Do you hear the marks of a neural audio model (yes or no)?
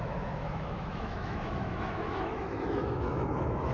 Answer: yes